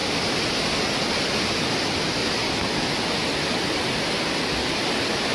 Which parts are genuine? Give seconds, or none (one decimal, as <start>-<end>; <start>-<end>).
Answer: 0.0-5.3